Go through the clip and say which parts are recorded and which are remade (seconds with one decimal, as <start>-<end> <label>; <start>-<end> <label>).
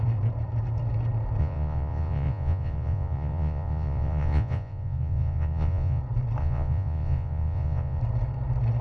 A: 0.0-1.4 recorded; 1.4-6.0 remade; 6.0-6.4 recorded; 6.4-8.0 remade; 8.0-8.8 recorded